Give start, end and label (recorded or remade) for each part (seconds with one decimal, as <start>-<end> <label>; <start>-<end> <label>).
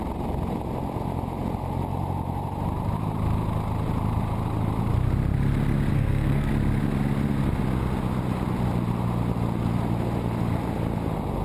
0.0-5.9 recorded; 5.9-6.5 remade; 6.5-11.4 recorded